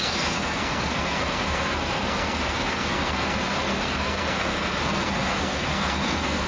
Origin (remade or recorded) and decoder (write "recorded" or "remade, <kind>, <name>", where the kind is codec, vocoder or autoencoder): remade, codec, SNAC